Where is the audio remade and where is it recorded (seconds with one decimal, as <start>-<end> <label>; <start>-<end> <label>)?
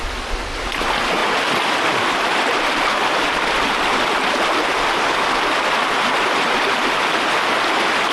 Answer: 0.0-8.1 recorded